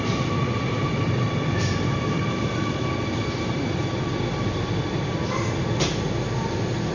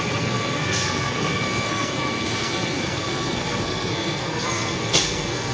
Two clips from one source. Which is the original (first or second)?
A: first